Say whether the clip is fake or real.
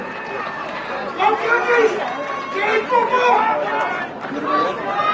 real